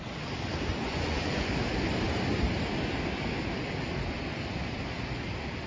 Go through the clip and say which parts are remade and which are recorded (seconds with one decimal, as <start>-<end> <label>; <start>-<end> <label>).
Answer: 0.0-0.7 recorded; 0.7-1.5 remade; 1.5-5.7 recorded